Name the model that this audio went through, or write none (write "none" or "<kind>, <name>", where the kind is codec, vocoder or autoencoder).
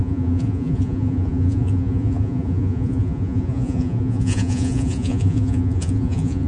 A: vocoder, Vocos